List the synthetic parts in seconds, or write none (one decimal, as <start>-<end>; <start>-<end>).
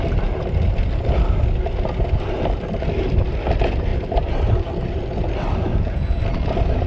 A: 5.7-6.2